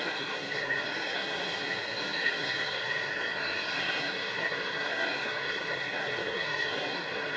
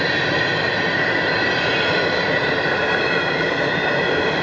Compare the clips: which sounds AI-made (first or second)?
first